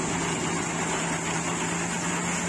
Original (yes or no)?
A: yes